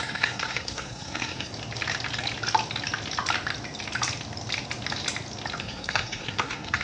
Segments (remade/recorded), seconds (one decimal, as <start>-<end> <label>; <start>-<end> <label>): 0.0-1.5 remade; 1.5-5.6 recorded; 5.6-6.8 remade